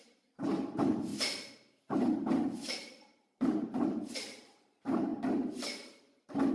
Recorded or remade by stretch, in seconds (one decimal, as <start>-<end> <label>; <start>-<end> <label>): 0.0-1.1 remade; 1.1-1.9 recorded; 1.9-5.1 remade; 5.1-6.5 recorded